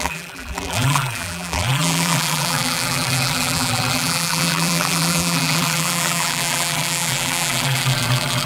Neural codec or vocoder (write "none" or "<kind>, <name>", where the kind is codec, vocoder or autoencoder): vocoder, BigVGAN v2